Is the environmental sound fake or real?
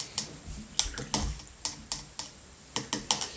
real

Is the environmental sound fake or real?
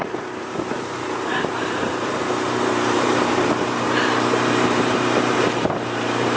fake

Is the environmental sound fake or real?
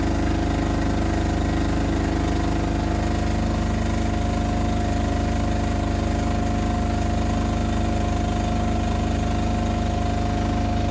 real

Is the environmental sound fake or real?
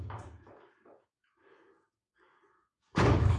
fake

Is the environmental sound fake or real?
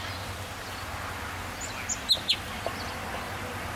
real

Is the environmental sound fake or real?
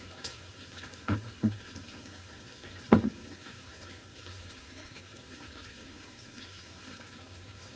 fake